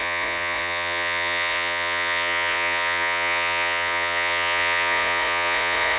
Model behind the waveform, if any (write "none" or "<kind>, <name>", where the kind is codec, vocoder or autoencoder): vocoder, Vocos